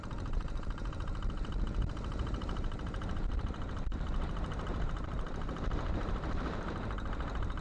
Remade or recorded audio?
remade